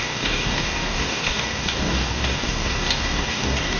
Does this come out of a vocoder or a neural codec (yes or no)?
yes